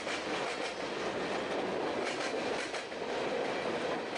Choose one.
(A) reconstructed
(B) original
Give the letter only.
B